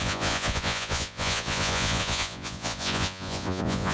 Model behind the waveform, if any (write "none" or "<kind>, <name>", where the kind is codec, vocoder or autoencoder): vocoder, Vocos